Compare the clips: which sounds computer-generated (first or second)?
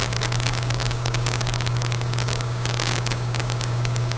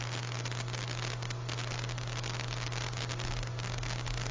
first